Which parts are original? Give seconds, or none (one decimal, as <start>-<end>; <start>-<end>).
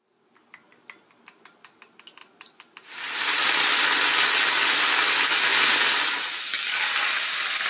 0.0-2.2; 3.5-5.5; 6.4-7.7